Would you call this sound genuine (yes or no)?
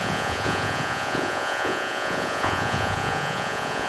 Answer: no